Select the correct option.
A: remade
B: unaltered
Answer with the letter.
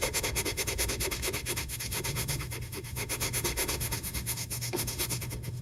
A